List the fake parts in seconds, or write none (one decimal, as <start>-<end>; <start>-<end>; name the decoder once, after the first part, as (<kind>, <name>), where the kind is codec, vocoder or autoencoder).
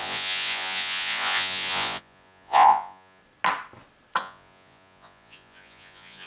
0.0-3.2 (vocoder, Vocos); 4.2-6.3